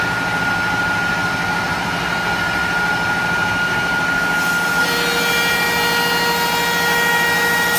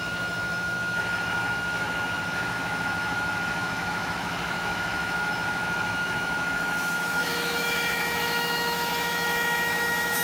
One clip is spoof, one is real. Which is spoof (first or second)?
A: second